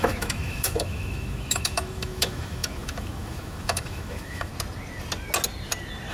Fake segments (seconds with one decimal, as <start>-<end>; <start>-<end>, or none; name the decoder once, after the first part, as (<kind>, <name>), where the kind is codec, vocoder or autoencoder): 0.0-4.5 (autoencoder, DAC-VAE)